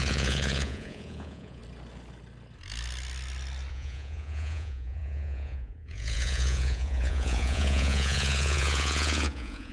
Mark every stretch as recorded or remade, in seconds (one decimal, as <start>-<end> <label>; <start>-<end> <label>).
0.0-1.6 remade; 1.6-3.7 recorded; 3.7-9.7 remade